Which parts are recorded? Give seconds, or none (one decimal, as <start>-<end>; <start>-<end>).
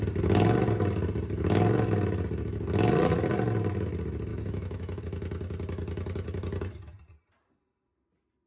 0.0-4.3; 5.0-8.5